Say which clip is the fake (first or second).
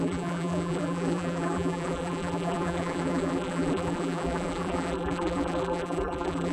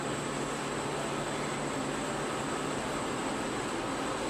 first